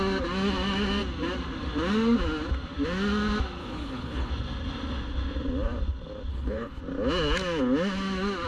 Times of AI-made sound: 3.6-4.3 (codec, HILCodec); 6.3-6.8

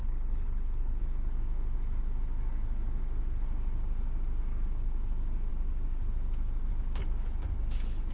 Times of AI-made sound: 0.0-1.0 (codec, HILCodec)

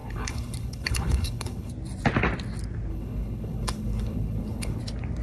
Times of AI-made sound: 0.0-1.7 (codec, HILCodec); 2.9-4.8